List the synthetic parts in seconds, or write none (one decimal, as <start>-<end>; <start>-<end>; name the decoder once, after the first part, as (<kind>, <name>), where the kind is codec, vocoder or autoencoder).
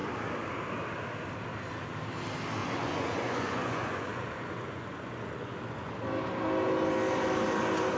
2.6-5.9 (vocoder, Vocos)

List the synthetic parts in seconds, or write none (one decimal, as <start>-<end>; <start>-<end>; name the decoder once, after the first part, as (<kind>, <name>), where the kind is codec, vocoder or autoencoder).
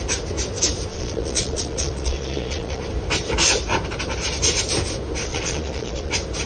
0.9-2.8 (vocoder, Vocos); 5.3-6.1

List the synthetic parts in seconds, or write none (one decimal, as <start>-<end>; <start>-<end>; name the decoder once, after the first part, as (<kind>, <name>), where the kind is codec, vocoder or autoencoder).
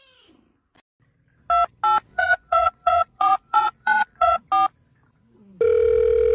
2.1-4.4 (vocoder, Vocos)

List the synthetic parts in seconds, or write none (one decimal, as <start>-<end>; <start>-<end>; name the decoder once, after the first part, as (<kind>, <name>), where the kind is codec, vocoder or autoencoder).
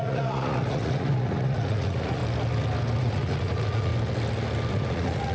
0.0-2.2 (vocoder, Vocos); 3.0-3.9; 4.7-5.3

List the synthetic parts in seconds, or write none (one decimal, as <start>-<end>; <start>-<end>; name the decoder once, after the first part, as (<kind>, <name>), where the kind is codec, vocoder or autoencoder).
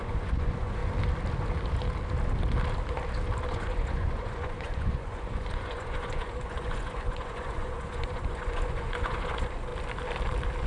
0.0-0.8 (vocoder, Vocos); 3.5-9.7